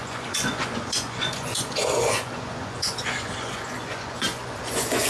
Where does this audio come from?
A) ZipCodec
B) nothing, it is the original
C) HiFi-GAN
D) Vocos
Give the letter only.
D